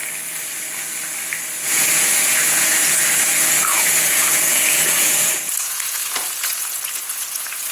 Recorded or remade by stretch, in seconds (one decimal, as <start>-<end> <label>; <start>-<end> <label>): 0.0-1.6 recorded; 1.6-7.7 remade